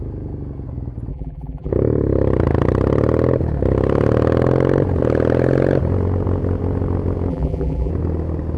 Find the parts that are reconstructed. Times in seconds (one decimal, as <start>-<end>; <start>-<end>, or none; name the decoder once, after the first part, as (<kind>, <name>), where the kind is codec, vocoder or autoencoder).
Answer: 1.1-1.7 (vocoder, BigVGAN v2); 7.3-7.9